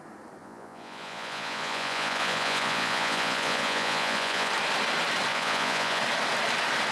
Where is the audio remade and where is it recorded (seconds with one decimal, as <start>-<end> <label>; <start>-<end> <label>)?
0.0-0.4 recorded; 0.4-4.5 remade; 4.5-5.3 recorded; 5.3-6.0 remade; 6.0-6.9 recorded